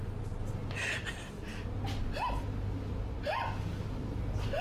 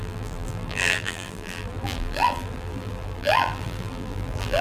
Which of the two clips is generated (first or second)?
second